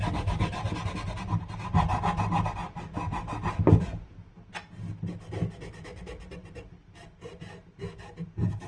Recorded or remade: recorded